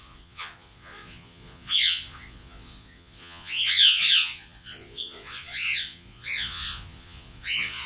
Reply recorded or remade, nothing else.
remade